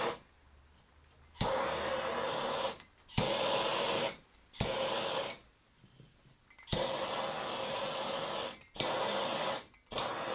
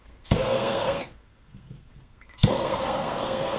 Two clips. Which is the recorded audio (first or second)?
first